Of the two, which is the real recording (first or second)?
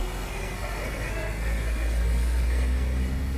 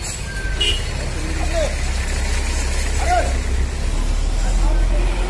second